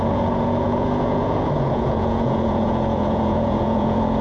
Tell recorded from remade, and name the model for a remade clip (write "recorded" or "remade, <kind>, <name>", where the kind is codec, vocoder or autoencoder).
remade, vocoder, Vocos